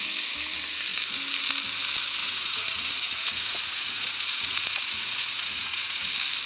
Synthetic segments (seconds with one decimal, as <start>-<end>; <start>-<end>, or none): 2.2-6.1